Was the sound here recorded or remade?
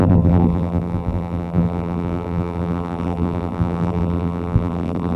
remade